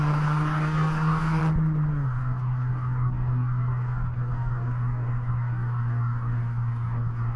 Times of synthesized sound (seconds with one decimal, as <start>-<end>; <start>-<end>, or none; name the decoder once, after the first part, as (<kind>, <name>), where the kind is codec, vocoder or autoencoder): 0.0-1.4 (codec, DAC); 1.9-7.4